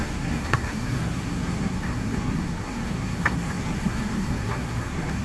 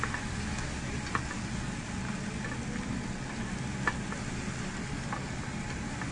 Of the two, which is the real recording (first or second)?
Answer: second